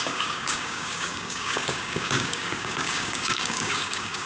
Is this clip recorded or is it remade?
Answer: remade